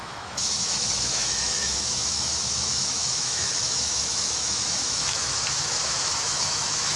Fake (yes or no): yes